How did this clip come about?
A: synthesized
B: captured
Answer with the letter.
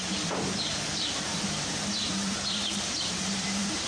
A